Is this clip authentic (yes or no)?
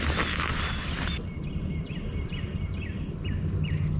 yes